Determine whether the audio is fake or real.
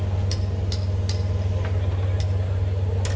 real